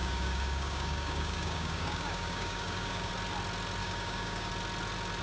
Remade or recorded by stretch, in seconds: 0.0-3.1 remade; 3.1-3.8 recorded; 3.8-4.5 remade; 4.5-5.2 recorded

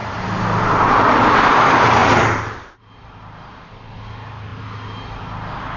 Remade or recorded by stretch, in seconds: 0.0-0.6 remade; 0.6-2.0 recorded; 2.0-3.2 remade; 3.2-5.8 recorded